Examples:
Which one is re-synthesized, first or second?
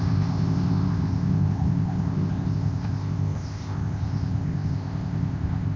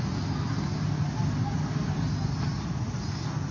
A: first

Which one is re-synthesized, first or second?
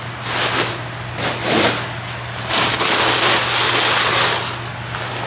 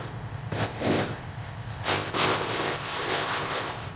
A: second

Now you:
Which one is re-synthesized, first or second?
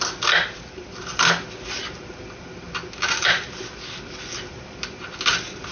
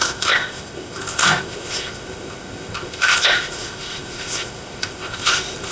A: second